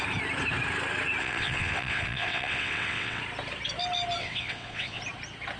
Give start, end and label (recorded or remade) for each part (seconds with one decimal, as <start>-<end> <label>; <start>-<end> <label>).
0.0-1.2 recorded; 1.2-3.2 remade; 3.2-4.2 recorded; 4.2-5.0 remade; 5.0-5.6 recorded